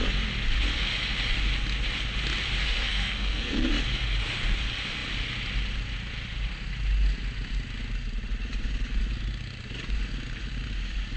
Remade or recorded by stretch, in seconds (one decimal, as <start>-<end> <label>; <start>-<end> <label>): 0.0-2.6 recorded; 2.6-3.7 remade; 3.7-11.2 recorded